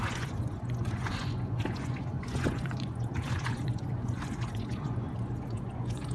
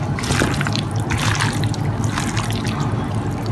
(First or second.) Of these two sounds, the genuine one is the second